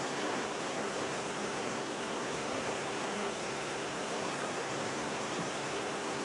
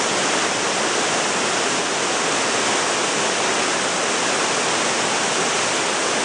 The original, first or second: second